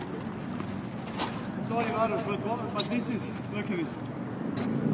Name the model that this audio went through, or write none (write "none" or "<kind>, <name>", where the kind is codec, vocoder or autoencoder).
none